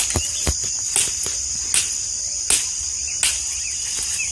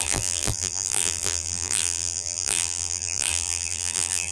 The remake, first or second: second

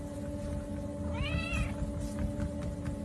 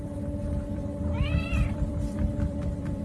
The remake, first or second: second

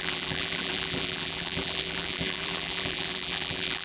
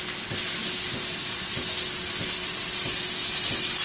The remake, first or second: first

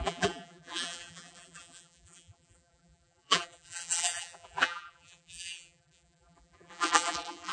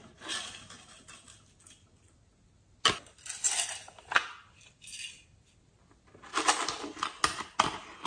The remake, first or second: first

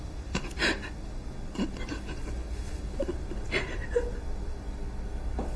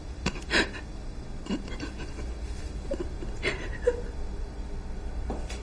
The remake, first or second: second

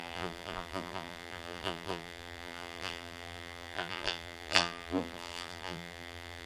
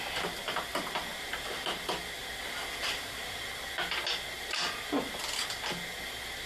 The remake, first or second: first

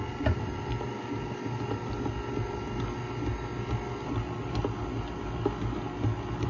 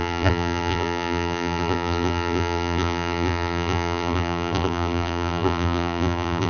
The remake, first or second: second